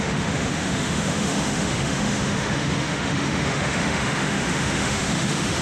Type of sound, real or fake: fake